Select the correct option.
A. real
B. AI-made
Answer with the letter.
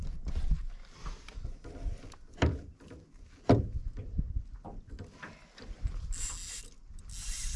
A